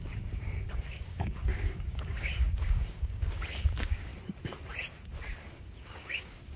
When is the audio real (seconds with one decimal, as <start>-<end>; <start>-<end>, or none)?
4.1-5.5